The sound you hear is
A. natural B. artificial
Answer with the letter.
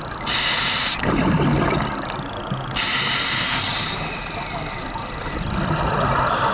A